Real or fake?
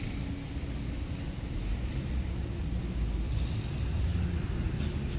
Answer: real